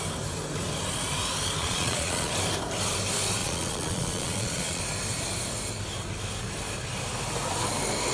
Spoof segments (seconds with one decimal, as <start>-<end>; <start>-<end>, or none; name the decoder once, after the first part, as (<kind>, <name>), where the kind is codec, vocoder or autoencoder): 1.6-2.3 (vocoder, Vocos); 3.4-4.8